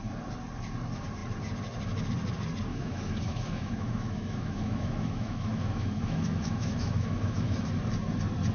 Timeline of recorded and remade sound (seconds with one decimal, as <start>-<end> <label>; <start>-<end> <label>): 0.0-2.7 recorded; 2.7-7.7 remade; 7.7-8.5 recorded